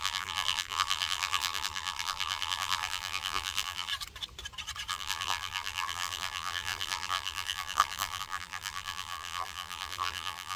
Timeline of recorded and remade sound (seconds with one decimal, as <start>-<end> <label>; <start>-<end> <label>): 0.0-3.9 remade; 3.9-4.9 recorded; 4.9-10.6 remade